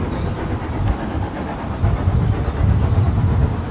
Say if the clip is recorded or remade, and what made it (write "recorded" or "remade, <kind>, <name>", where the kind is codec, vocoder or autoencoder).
recorded